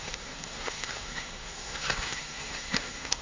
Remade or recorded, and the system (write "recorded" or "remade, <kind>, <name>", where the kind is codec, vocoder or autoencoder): remade, codec, SNAC